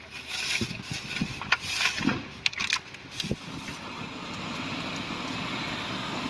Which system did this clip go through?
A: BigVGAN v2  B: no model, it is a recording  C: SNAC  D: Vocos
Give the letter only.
B